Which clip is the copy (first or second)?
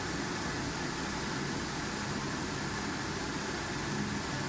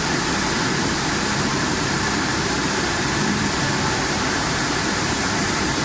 second